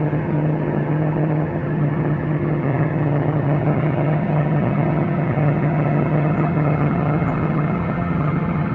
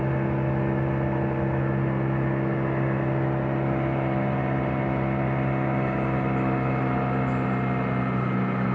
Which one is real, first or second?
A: second